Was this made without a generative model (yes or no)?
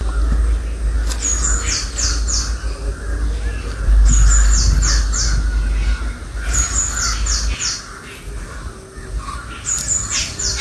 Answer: yes